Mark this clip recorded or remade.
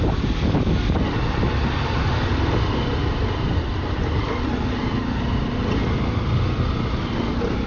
recorded